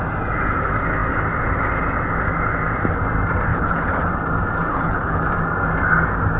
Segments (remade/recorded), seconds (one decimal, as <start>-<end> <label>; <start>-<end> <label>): 0.0-3.5 recorded; 3.5-4.1 remade; 4.1-4.7 recorded; 4.7-5.2 remade; 5.2-6.4 recorded